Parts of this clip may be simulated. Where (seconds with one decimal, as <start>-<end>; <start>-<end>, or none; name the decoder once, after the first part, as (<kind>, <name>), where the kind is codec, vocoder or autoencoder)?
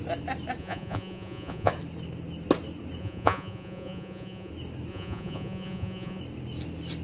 0.6-1.7 (vocoder, Vocos); 3.0-4.5; 4.9-6.2